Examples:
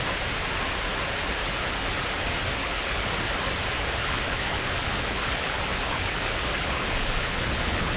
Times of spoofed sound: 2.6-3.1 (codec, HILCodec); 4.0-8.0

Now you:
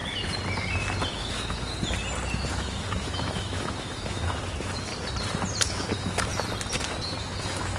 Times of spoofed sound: 1.1-1.7 (autoencoder, DAC-VAE); 2.5-4.9; 5.6-6.3; 7.2-7.8

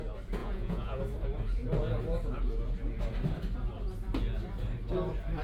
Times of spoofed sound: 0.4-1.0 (vocoder, Vocos)

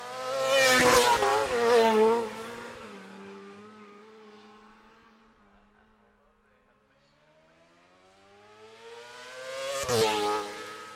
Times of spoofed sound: 1.3-5.2 (codec, DAC)